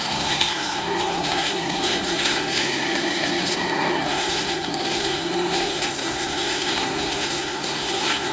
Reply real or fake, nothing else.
fake